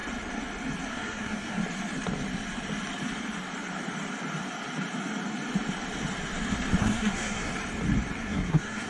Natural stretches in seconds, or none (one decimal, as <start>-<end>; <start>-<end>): 0.0-0.9; 1.6-6.8; 7.5-8.2